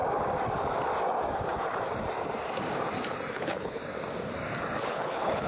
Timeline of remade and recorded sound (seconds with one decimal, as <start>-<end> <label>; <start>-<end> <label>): 0.0-3.3 recorded; 3.3-3.8 remade; 3.8-4.8 recorded; 4.8-5.5 remade